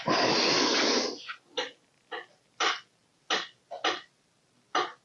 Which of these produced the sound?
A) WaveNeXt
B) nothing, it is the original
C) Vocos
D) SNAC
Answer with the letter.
B